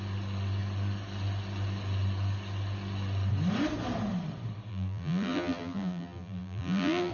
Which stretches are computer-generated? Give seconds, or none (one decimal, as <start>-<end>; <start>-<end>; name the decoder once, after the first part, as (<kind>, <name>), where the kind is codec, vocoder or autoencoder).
4.7-7.1 (vocoder, BigVGAN v2)